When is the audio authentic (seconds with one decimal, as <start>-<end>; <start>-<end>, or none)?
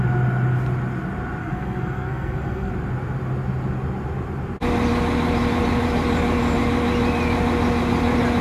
0.0-1.4; 2.7-8.4